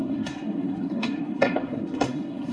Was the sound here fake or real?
fake